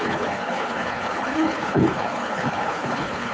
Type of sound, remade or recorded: remade